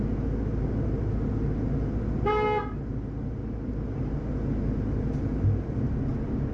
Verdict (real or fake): real